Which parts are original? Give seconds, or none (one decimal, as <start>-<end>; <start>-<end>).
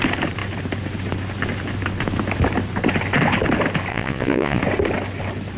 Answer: 0.0-3.9; 4.6-5.6